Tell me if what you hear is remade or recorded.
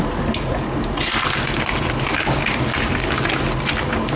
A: recorded